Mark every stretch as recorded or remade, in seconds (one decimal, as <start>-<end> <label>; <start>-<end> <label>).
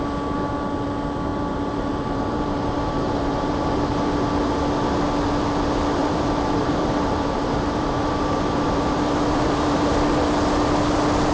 0.0-1.3 recorded; 1.3-3.9 remade; 3.9-6.0 recorded; 6.0-9.9 remade; 9.9-11.3 recorded